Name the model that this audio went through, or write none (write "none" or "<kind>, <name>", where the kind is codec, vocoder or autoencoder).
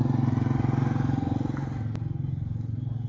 none